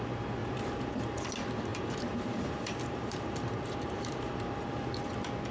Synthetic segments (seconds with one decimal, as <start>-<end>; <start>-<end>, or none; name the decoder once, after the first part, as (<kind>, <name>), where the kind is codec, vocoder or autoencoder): 0.4-1.0 (vocoder, BigVGAN v2); 1.7-5.0